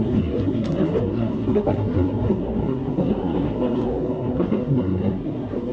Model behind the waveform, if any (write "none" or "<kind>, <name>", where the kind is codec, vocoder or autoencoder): codec, SNAC